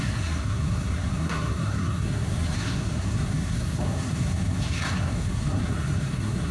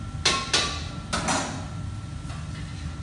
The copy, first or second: first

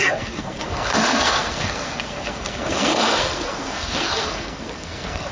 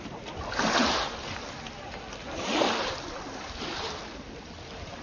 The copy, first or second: first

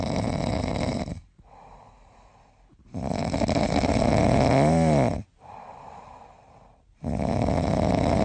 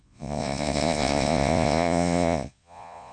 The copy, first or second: second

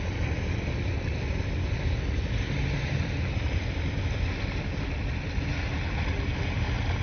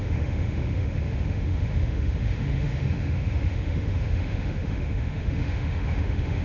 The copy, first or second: second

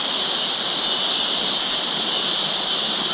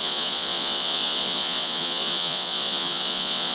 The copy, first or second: second